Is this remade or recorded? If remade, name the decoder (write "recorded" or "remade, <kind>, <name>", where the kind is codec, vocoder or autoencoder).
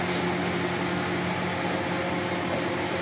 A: recorded